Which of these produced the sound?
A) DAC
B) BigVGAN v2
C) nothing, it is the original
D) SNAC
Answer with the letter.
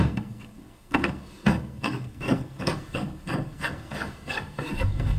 D